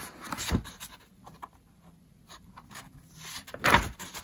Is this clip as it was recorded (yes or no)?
no